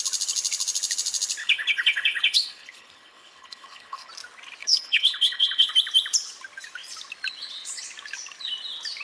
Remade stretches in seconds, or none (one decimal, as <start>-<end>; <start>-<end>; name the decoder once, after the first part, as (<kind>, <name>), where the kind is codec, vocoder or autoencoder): 1.4-4.1 (codec, HILCodec); 4.6-5.7